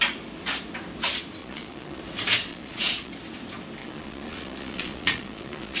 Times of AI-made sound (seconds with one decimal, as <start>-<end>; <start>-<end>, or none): 1.4-2.0; 2.5-3.1; 3.8-5.8